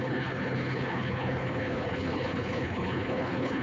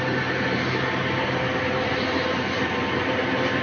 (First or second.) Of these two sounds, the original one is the second